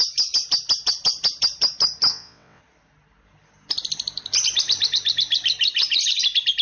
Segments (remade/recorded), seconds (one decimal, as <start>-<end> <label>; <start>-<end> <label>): 0.0-2.1 recorded; 2.1-2.6 remade; 2.6-6.6 recorded